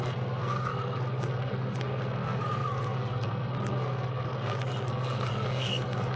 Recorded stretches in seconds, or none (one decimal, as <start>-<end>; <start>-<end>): none